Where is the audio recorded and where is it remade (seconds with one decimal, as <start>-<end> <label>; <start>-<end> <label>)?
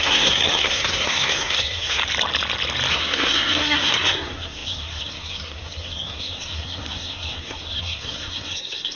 0.0-2.0 remade; 2.0-2.9 recorded; 2.9-9.0 remade